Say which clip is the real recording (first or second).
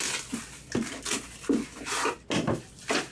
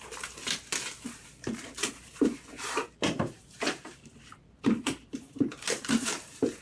first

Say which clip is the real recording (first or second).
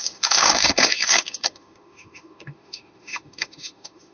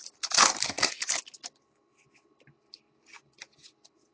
second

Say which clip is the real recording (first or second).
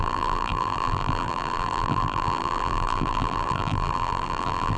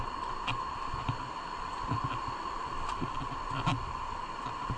second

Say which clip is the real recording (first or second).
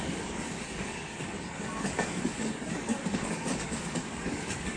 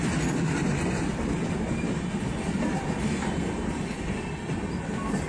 second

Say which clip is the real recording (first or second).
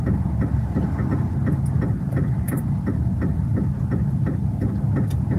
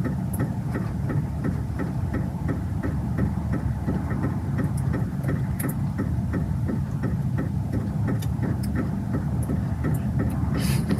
first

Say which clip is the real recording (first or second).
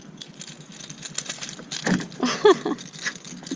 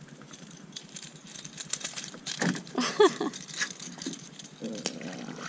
first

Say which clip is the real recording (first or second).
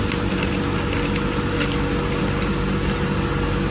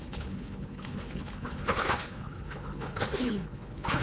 first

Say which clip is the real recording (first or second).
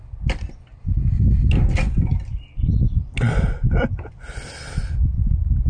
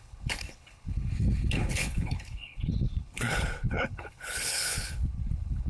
first